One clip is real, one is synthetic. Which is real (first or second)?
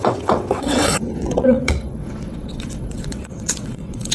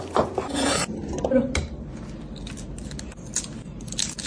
second